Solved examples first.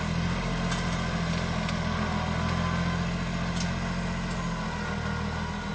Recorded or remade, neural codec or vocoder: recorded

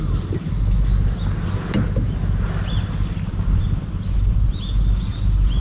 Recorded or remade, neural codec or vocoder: recorded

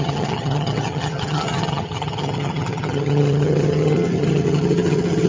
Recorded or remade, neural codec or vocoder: remade, vocoder, HiFi-GAN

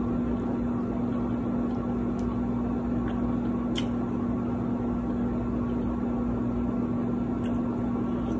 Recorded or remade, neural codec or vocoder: recorded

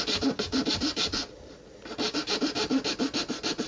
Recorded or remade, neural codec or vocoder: recorded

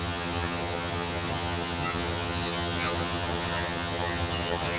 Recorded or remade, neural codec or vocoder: remade, vocoder, HiFi-GAN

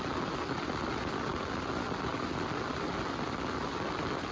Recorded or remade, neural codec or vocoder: recorded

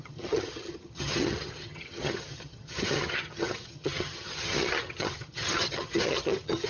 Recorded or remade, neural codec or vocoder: remade, vocoder, HiFi-GAN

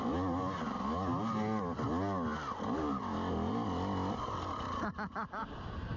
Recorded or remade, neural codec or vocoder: recorded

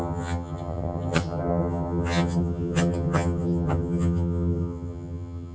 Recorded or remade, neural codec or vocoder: remade, vocoder, HiFi-GAN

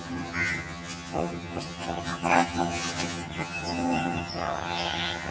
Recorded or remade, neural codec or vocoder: remade, vocoder, HiFi-GAN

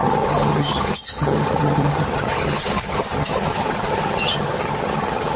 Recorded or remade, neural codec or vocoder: remade, vocoder, HiFi-GAN